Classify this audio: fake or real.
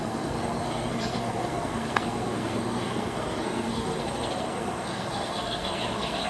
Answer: fake